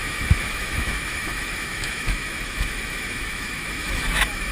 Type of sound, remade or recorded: remade